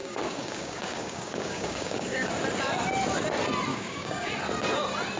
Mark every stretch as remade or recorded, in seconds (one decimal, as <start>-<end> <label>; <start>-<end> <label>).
0.0-2.3 remade; 2.3-3.7 recorded; 3.7-4.3 remade; 4.3-5.2 recorded